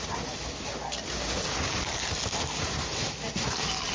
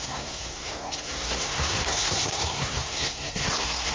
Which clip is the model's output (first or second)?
second